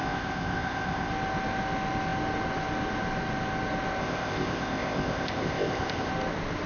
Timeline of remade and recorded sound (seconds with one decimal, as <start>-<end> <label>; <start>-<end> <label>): 0.0-1.1 remade; 1.1-4.0 recorded; 4.0-6.1 remade; 6.1-6.7 recorded